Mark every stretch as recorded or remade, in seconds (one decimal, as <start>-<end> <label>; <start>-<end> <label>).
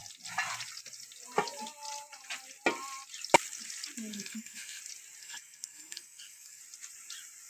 0.0-4.1 recorded; 4.1-4.8 remade; 4.8-5.2 recorded; 5.2-6.6 remade; 6.6-7.5 recorded